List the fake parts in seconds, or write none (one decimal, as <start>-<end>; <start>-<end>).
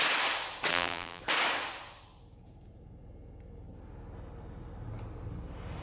0.7-1.2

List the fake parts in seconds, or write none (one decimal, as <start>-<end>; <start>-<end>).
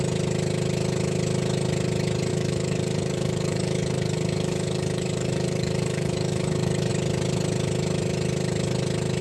2.3-6.9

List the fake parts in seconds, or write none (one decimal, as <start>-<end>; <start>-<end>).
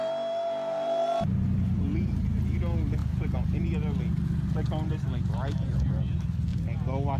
none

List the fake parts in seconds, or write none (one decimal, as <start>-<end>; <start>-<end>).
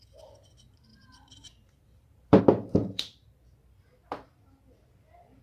0.9-2.4; 2.8-3.4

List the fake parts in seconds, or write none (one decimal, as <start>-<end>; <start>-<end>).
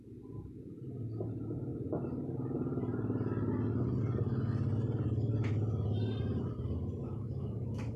7.0-8.0